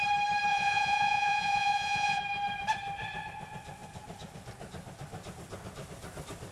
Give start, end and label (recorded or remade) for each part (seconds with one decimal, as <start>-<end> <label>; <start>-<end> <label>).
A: 0.0-0.5 recorded; 0.5-2.2 remade; 2.2-6.5 recorded